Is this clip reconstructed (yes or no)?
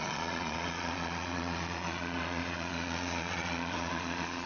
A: yes